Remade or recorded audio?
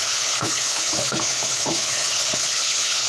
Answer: remade